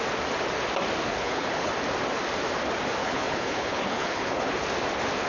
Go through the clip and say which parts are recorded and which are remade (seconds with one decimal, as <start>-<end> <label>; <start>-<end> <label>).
0.0-1.0 recorded; 1.0-1.7 remade; 1.7-3.0 recorded; 3.0-4.5 remade; 4.5-5.3 recorded